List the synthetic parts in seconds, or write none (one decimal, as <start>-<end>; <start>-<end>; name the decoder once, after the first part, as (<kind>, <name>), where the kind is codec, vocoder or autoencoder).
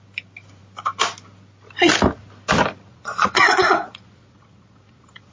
2.9-5.3 (vocoder, Vocos)